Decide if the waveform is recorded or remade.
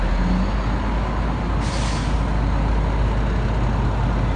recorded